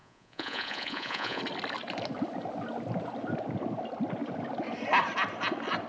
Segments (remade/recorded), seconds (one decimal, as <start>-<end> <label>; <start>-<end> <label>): 0.0-1.4 remade; 1.4-5.9 recorded